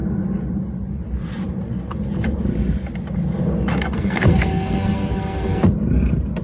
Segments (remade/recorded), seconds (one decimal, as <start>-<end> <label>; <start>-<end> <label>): 0.0-3.7 recorded; 3.7-5.6 remade; 5.6-6.4 recorded